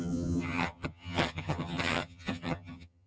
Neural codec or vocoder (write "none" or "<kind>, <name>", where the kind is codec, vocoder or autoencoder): vocoder, HiFi-GAN